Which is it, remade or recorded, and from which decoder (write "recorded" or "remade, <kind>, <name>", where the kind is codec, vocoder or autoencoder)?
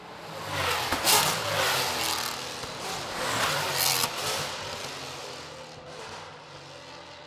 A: recorded